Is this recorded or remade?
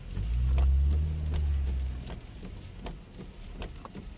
recorded